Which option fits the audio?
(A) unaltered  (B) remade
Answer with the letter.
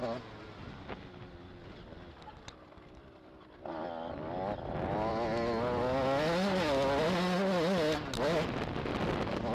A